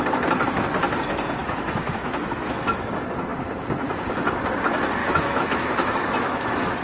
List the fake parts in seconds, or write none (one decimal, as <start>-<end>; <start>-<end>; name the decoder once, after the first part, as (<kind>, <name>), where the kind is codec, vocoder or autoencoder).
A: 1.4-2.9 (autoencoder, DAC-VAE); 5.0-6.8